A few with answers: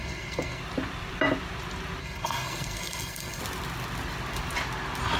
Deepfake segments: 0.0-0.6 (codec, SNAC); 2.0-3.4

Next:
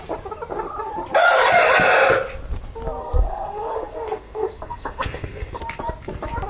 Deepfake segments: 3.0-5.6 (codec, SNAC)

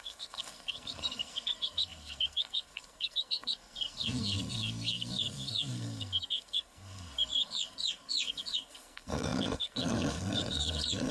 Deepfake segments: 0.0-11.1 (codec, SNAC)

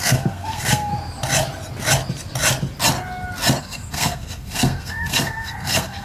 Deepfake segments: 0.0-0.9 (codec, SNAC); 3.6-6.0